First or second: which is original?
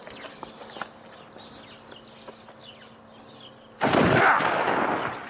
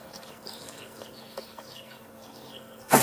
first